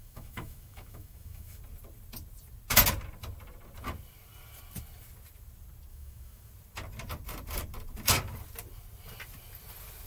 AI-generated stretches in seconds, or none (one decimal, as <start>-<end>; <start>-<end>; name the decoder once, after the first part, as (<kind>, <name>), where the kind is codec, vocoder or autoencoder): 0.0-1.6 (autoencoder, DAC-VAE); 5.9-6.5